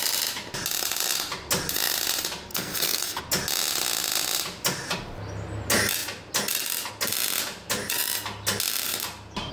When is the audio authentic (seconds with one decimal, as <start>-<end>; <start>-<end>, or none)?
0.0-2.5; 3.2-9.5